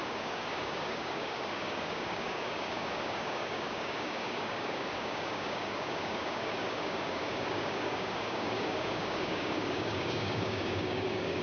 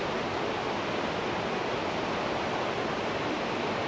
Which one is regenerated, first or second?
first